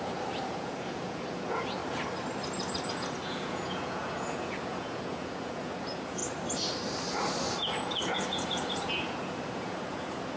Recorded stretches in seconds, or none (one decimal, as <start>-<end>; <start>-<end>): 1.8-2.9; 6.2-7.6